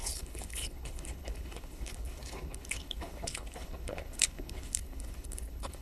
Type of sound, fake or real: fake